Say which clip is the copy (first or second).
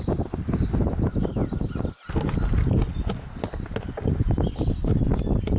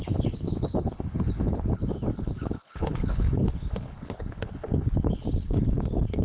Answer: second